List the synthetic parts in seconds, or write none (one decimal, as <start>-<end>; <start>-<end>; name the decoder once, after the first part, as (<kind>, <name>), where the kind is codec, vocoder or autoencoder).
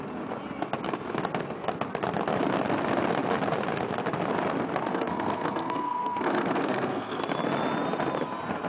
4.9-7.2 (codec, SNAC)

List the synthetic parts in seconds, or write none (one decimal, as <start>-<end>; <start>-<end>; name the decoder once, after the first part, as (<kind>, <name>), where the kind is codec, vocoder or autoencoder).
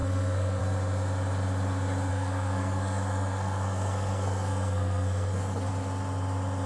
0.0-0.6 (codec, SNAC); 2.1-5.7